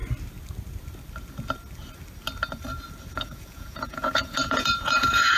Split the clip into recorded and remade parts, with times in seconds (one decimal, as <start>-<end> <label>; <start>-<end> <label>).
0.0-3.2 recorded; 3.2-5.4 remade